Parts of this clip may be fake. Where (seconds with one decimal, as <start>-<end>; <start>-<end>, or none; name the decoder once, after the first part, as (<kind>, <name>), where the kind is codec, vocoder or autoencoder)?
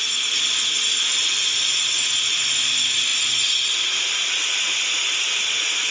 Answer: none